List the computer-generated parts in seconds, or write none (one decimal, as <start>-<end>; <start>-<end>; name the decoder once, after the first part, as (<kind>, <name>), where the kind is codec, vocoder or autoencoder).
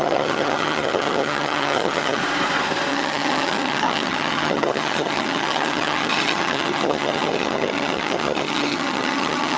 0.0-2.2 (vocoder, HiFi-GAN); 2.9-9.6